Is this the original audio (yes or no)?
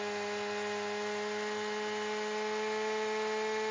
yes